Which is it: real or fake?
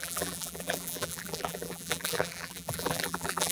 fake